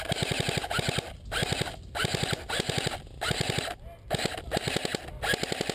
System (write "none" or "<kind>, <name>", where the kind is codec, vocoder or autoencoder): none